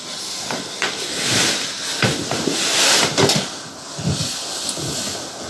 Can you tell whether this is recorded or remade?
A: recorded